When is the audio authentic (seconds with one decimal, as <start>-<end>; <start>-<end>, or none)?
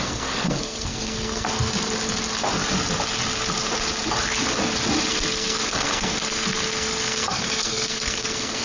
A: 1.5-5.1